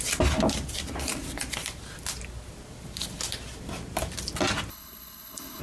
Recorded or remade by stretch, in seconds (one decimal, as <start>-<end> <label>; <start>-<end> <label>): 0.0-4.7 recorded; 4.7-5.6 remade